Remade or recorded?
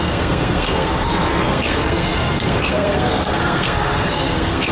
remade